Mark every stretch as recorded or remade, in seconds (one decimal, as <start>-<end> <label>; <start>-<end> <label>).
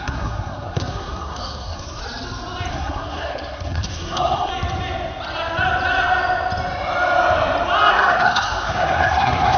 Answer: 0.0-2.0 remade; 2.0-2.7 recorded; 2.7-4.5 remade; 4.5-7.9 recorded; 7.9-9.6 remade